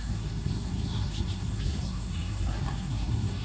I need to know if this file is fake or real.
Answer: fake